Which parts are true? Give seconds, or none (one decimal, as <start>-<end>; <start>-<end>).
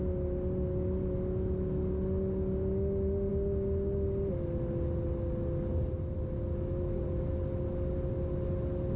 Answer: 0.0-9.0